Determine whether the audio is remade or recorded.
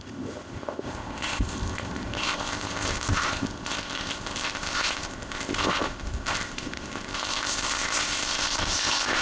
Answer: remade